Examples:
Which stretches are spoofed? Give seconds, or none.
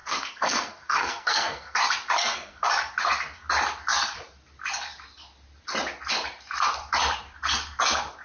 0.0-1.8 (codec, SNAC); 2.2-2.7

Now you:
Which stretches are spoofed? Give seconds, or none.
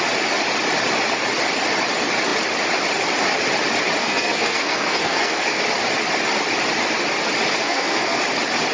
4.0-5.6 (codec, SNAC); 7.6-8.2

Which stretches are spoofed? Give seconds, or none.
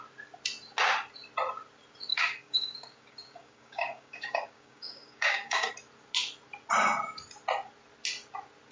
2.1-5.7 (codec, DAC)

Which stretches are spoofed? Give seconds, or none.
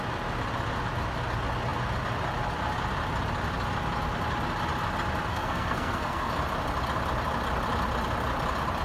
5.3-6.3 (codec, SNAC)